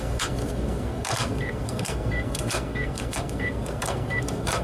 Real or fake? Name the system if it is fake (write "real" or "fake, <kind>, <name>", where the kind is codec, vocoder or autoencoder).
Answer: fake, codec, SNAC